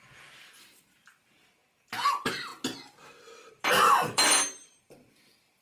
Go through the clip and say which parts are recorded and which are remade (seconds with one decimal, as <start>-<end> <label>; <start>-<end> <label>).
0.0-2.5 remade; 2.5-3.5 recorded; 3.5-5.6 remade